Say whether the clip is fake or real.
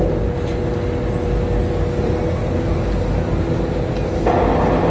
real